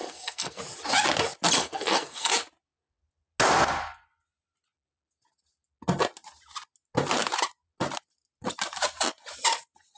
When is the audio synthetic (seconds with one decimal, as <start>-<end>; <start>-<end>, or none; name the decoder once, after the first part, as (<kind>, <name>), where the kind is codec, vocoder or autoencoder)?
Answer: 0.0-0.6 (codec, SNAC); 1.6-2.3